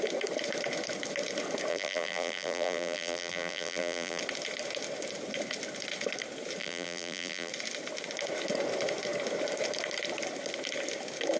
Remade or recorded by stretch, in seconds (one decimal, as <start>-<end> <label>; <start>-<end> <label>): 0.0-1.7 recorded; 1.7-4.2 remade; 4.2-6.6 recorded; 6.6-7.5 remade; 7.5-11.4 recorded